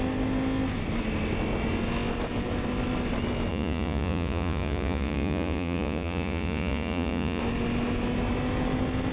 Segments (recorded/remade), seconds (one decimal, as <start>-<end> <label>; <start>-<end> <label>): 0.0-3.5 recorded; 3.5-7.4 remade; 7.4-9.1 recorded